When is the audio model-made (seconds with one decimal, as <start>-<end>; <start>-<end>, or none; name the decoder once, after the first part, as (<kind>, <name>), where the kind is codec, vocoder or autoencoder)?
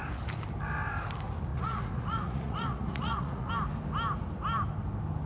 1.5-3.5 (vocoder, Vocos)